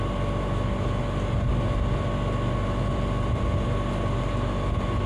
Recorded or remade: recorded